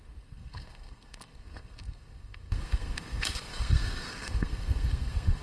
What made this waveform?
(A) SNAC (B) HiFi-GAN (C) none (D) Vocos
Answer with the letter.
A